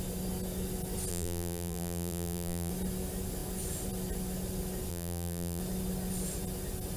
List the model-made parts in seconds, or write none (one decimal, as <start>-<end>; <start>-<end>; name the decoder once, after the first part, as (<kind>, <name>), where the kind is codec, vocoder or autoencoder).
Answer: 1.1-2.7 (vocoder, BigVGAN v2); 4.9-5.6